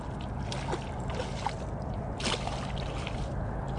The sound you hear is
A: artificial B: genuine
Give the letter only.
B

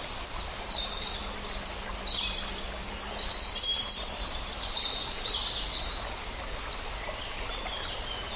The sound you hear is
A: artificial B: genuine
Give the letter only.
B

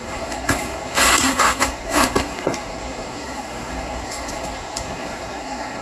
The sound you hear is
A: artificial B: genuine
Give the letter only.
A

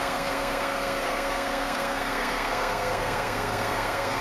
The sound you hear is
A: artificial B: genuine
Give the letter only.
A